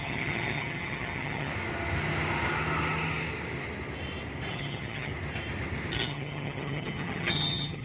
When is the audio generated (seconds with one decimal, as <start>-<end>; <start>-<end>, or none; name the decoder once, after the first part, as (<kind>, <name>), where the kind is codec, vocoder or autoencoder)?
0.0-1.5 (vocoder, HiFi-GAN); 4.5-5.1; 5.9-7.8